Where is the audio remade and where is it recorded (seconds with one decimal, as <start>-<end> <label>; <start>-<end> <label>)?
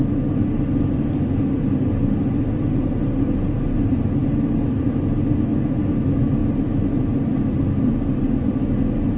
0.0-9.2 recorded